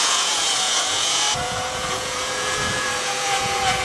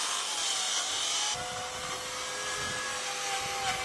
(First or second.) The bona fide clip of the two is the second